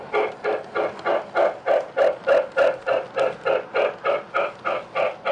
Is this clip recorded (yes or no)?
yes